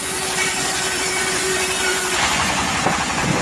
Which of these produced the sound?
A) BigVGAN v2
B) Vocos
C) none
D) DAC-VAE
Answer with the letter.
B